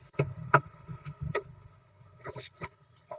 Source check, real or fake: fake